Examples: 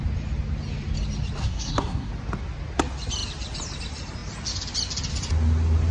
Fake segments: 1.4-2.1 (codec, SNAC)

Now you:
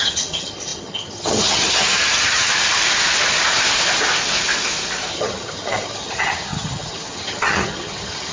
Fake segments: 0.0-2.5 (vocoder, HiFi-GAN); 5.1-8.3

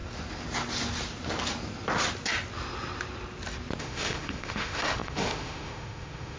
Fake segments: 3.8-6.4 (autoencoder, DAC-VAE)